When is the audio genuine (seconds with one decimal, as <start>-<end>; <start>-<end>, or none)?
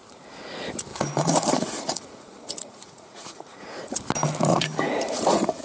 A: 0.0-0.9; 4.0-4.5